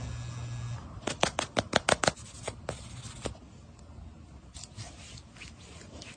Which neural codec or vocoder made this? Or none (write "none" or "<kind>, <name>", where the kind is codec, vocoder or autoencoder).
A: none